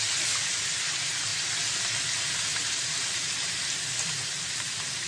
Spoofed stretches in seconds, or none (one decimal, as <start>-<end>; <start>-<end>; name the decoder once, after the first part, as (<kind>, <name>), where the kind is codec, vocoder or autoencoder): none